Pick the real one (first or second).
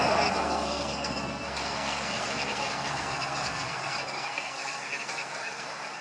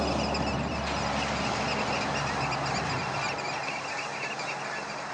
second